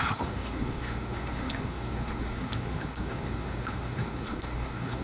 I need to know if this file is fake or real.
fake